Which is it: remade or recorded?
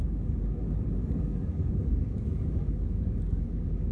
remade